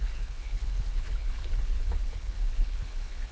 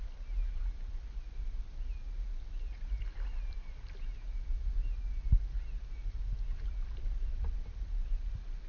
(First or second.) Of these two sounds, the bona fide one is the second